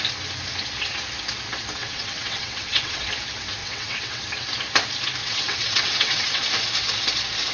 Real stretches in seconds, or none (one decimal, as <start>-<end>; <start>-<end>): 0.0-1.8; 3.1-3.6; 4.2-5.2; 6.5-7.5